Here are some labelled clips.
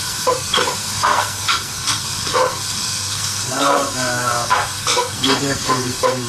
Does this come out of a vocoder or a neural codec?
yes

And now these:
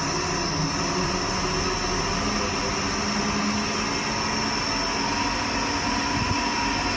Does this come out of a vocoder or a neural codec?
no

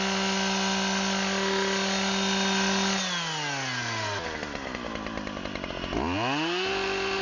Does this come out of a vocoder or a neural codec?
no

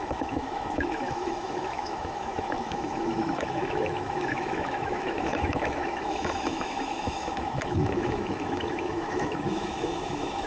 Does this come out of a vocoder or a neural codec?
yes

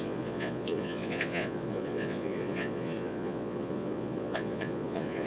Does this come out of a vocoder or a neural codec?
yes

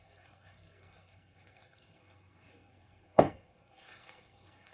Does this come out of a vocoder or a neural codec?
yes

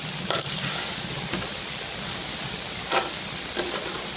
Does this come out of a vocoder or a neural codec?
no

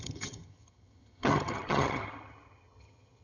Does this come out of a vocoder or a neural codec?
yes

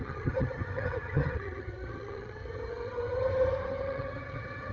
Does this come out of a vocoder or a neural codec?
yes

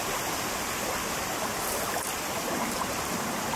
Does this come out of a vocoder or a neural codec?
no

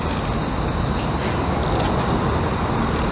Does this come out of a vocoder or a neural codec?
no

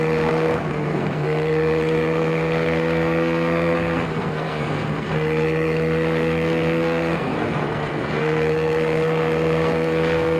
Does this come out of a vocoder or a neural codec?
yes